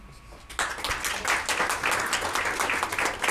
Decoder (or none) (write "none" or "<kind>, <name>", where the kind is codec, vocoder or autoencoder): none